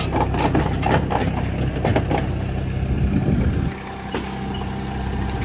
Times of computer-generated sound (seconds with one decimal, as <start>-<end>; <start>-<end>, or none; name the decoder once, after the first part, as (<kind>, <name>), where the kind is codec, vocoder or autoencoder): none